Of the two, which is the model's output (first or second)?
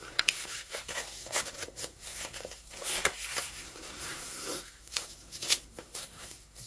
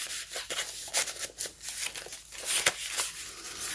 first